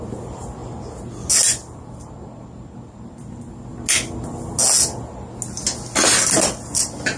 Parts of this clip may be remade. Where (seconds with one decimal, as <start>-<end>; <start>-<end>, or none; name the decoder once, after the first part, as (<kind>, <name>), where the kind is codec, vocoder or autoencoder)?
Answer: none